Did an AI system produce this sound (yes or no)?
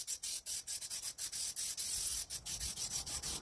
no